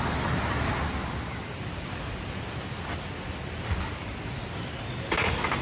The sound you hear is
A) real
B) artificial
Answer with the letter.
A